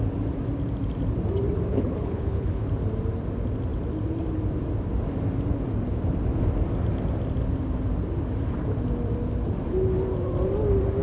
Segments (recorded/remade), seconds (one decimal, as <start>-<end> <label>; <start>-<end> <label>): 0.0-1.7 recorded; 1.7-2.7 remade; 2.7-11.0 recorded